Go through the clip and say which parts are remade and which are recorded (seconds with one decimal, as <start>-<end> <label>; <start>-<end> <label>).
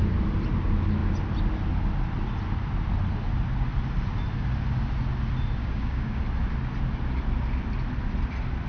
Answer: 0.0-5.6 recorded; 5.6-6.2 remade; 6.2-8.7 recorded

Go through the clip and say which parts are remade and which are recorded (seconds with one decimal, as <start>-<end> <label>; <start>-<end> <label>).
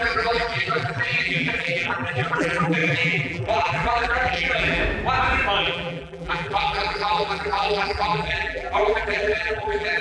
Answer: 0.0-4.8 remade; 4.8-5.6 recorded; 5.6-10.0 remade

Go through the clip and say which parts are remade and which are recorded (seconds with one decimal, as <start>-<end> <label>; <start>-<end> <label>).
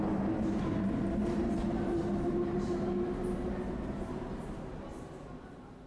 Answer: 0.0-1.2 recorded; 1.2-2.0 remade; 2.0-5.9 recorded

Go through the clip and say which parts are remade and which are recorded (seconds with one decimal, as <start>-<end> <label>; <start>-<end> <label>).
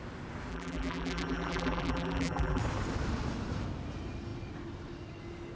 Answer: 0.0-0.5 recorded; 0.5-2.6 remade; 2.6-5.5 recorded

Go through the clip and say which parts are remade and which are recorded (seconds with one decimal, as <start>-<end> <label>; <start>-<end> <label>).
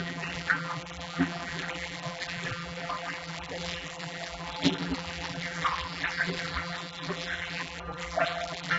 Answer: 0.0-8.8 remade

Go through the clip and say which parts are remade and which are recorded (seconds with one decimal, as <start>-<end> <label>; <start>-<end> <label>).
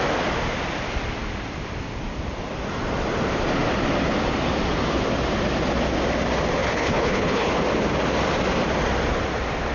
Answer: 0.0-6.6 recorded; 6.6-7.5 remade; 7.5-9.7 recorded